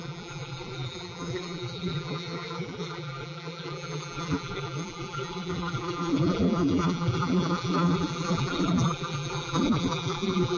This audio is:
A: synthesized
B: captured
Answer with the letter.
A